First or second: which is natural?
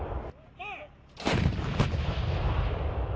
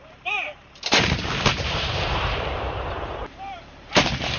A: first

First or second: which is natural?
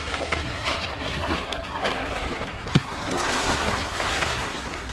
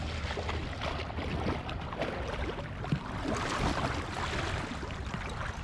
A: second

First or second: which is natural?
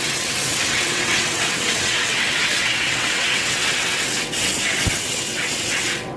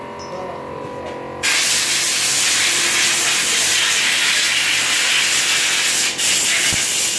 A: second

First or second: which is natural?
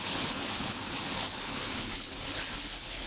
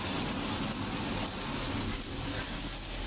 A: second